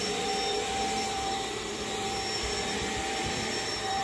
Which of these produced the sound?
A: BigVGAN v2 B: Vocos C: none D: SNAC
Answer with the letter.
A